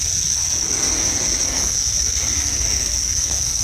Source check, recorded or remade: remade